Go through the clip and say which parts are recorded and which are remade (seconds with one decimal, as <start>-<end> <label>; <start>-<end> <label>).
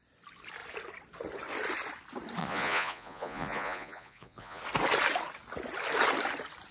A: 0.0-2.4 recorded; 2.4-4.6 remade; 4.6-6.7 recorded